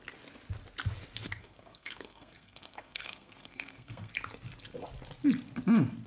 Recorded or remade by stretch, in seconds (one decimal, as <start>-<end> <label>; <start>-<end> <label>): 0.0-1.4 recorded; 1.4-4.1 remade; 4.1-6.1 recorded